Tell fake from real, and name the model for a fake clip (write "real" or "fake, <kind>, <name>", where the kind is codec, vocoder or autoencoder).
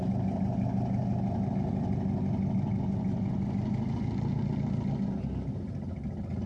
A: real